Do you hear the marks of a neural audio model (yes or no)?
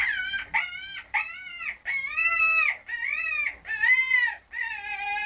yes